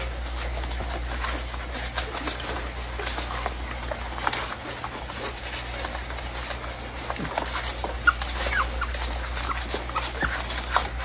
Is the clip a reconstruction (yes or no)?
no